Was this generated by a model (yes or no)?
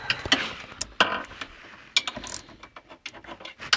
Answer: no